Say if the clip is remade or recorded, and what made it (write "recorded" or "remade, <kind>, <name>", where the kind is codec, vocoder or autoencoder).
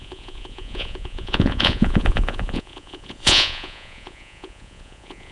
remade, vocoder, Vocos